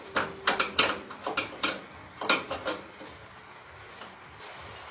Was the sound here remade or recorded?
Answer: recorded